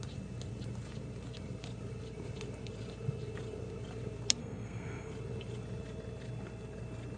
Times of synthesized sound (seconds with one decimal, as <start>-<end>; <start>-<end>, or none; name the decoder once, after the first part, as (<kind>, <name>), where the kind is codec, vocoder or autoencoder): 4.4-5.1 (codec, SNAC)